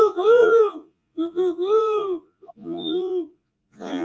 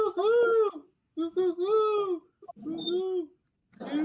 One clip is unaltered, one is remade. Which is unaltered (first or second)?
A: second